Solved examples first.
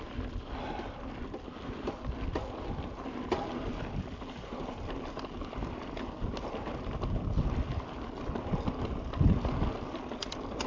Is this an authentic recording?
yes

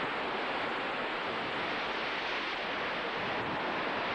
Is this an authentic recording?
yes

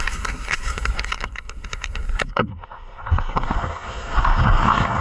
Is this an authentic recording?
no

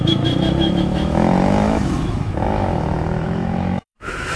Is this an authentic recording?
no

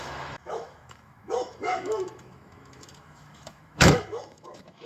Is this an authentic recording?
no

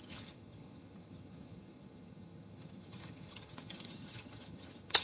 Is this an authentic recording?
no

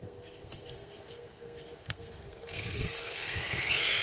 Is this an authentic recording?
no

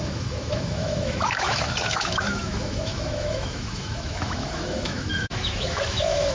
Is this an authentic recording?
no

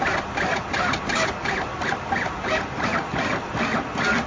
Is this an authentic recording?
no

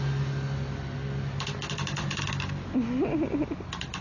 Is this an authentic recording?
yes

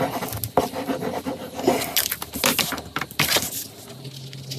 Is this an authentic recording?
yes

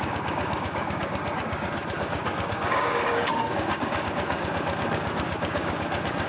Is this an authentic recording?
no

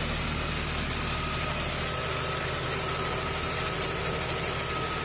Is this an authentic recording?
yes